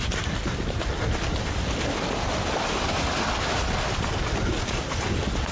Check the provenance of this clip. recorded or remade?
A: recorded